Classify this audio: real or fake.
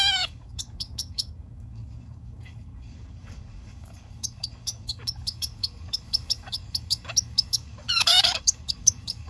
fake